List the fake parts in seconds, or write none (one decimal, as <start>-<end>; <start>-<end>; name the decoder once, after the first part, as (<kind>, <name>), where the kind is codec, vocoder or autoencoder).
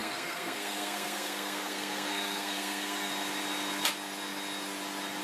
0.0-3.1 (codec, SNAC)